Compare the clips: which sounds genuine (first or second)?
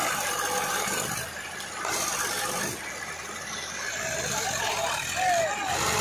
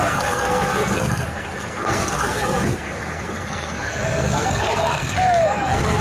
first